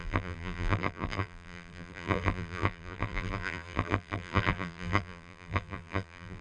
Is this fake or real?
fake